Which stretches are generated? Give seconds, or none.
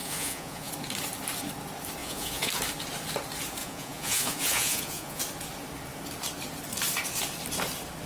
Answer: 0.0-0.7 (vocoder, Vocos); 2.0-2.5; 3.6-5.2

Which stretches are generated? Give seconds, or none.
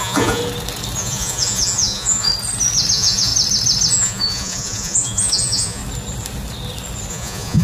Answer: 0.0-0.4 (vocoder, Vocos); 1.0-2.3; 2.9-3.3; 3.9-5.8; 7.1-7.6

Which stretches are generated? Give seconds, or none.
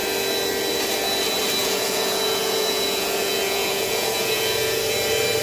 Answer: 1.6-4.8 (vocoder, Vocos)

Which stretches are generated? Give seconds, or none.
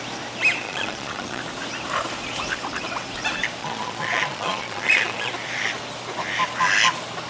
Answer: 0.6-1.4 (vocoder, Vocos); 3.6-5.3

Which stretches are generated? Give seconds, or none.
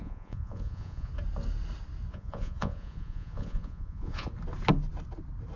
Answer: 0.0-1.1 (vocoder, Vocos); 2.1-4.3